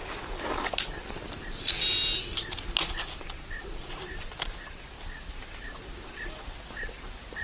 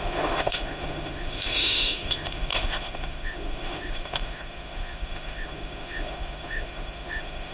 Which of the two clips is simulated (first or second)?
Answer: second